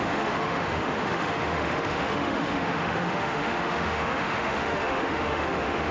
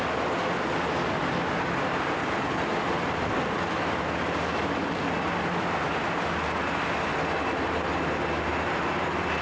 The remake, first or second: first